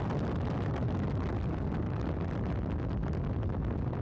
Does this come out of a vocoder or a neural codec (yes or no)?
no